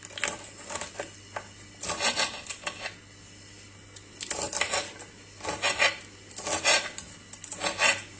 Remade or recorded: recorded